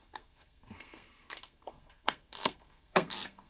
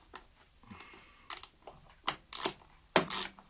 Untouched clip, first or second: second